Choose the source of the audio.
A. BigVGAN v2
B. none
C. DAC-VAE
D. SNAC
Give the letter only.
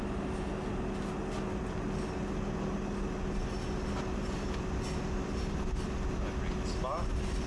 B